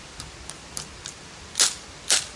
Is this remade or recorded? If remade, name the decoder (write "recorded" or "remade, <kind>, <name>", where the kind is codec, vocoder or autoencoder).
recorded